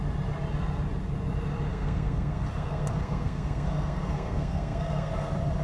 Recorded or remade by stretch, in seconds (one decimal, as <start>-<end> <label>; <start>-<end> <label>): 0.0-1.7 recorded; 1.7-5.1 remade; 5.1-5.6 recorded